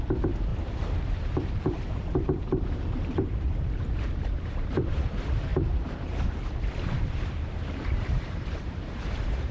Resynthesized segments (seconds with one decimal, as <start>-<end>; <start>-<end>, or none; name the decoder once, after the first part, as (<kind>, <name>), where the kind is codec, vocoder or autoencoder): 0.0-9.5 (vocoder, BigVGAN v2)